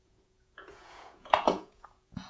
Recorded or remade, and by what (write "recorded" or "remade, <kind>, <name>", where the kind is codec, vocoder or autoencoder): remade, vocoder, Vocos